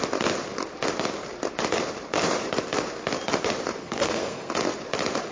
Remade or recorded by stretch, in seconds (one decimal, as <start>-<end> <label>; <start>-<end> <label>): 0.0-3.8 recorded; 3.8-4.5 remade; 4.5-5.3 recorded